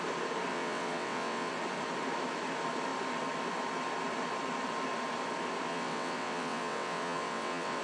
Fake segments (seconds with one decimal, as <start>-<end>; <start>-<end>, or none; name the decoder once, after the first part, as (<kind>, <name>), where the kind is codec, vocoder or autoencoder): 0.5-1.5 (vocoder, WaveNeXt); 5.7-7.8